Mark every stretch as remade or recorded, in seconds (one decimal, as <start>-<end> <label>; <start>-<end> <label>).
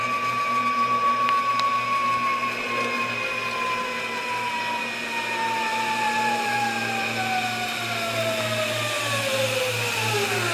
0.0-5.7 recorded; 5.7-6.7 remade; 6.7-10.5 recorded